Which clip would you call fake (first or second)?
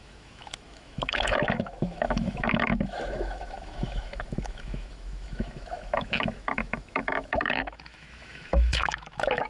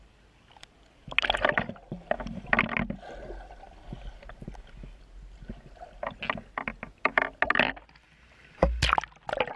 first